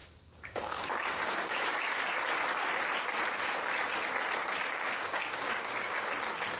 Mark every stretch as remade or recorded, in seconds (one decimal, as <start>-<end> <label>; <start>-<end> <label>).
0.0-2.0 remade; 2.0-4.6 recorded; 4.6-6.1 remade; 6.1-6.6 recorded